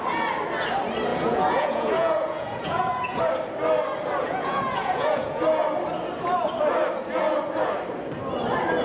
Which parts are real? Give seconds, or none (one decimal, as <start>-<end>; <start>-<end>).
0.0-1.1; 3.2-4.2; 5.4-8.8